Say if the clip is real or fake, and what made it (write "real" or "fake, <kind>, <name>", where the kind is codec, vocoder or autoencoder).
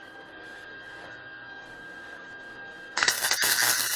fake, codec, SNAC